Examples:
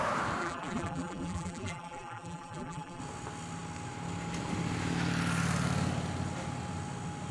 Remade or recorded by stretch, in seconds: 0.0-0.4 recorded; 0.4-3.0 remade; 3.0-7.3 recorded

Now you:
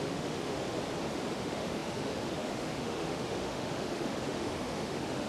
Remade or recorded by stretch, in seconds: 0.0-0.6 remade; 0.6-1.3 recorded; 1.3-5.3 remade

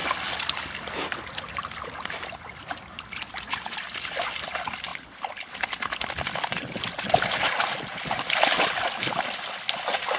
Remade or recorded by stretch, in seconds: 0.0-10.2 recorded

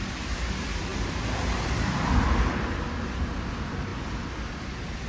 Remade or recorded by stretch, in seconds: 0.0-5.1 recorded

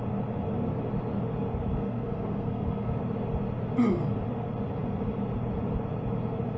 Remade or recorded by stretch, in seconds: 0.0-1.7 recorded; 1.7-3.0 remade; 3.0-6.6 recorded

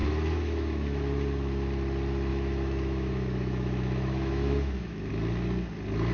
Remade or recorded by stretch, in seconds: 0.0-1.0 remade; 1.0-2.3 recorded; 2.3-5.1 remade; 5.1-6.1 recorded

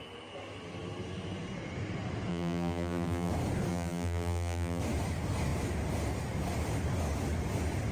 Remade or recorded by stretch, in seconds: 0.0-2.3 recorded; 2.3-3.3 remade; 3.3-3.7 recorded; 3.7-4.8 remade; 4.8-7.9 recorded